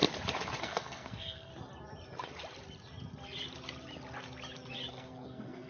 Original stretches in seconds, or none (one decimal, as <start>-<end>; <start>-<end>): 0.0-0.6; 1.5-4.9